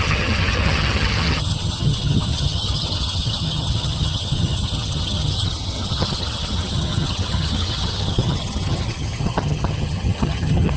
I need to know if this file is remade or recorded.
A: remade